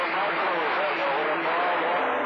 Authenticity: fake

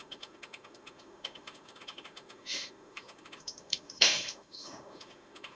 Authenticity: fake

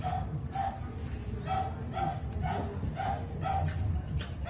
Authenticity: real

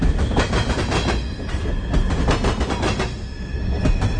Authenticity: real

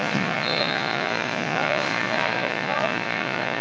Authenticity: fake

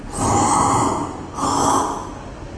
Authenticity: real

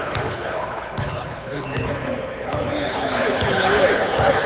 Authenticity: fake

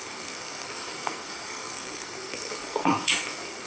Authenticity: fake